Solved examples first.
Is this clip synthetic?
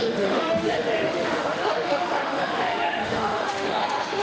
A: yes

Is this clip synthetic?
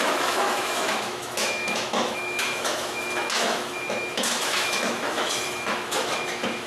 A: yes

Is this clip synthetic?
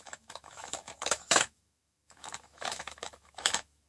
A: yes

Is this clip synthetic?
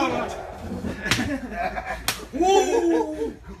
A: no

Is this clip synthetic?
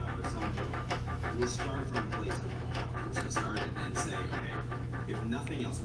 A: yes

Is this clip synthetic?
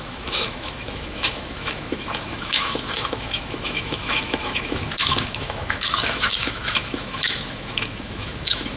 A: yes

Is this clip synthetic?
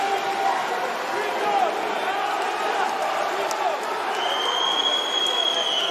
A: no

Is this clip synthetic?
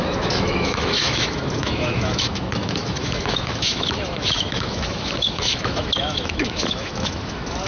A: yes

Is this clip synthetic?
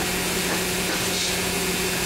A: no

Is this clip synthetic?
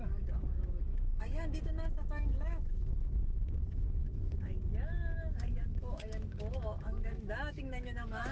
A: yes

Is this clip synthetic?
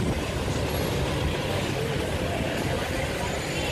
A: no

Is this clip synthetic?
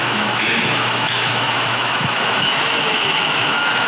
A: yes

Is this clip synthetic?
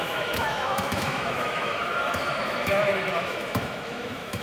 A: yes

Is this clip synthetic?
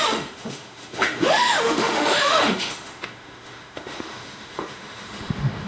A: yes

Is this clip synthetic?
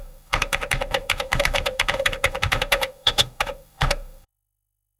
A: yes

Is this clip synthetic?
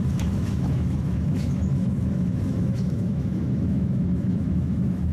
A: yes